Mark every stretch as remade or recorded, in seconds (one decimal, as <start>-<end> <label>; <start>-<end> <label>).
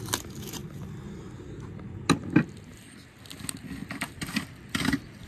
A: 0.0-5.3 recorded